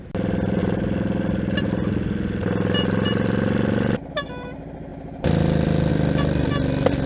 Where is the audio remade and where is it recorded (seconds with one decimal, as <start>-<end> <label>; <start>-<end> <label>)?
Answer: 0.0-7.1 recorded